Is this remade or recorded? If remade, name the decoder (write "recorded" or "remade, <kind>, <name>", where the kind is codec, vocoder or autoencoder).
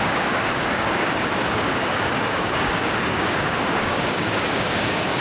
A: remade, codec, DAC